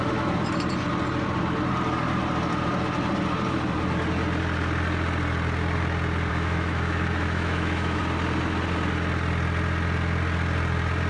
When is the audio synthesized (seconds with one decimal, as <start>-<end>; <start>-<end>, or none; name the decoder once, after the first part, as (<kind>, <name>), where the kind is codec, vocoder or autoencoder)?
6.3-8.0 (autoencoder, DAC-VAE)